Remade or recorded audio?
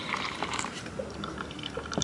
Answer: remade